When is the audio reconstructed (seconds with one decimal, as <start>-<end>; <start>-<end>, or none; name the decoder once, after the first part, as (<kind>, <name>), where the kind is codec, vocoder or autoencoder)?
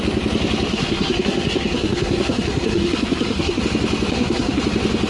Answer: 0.7-3.6 (codec, SNAC); 4.1-4.6